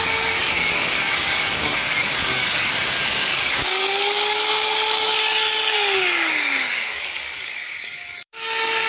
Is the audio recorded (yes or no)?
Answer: no